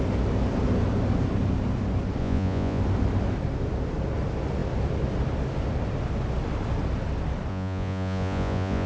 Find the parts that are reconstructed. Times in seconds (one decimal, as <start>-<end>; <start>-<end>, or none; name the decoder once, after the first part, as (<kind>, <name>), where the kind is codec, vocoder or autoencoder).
2.2-2.8 (vocoder, Vocos); 7.5-8.9